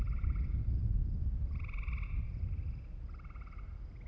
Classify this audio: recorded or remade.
recorded